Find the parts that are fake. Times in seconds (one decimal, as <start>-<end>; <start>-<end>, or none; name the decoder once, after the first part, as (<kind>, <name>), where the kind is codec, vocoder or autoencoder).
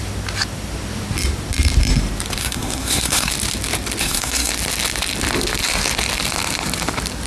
2.4-3.3 (codec, SNAC); 4.0-4.5